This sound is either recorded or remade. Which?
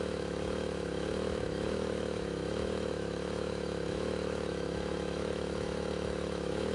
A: remade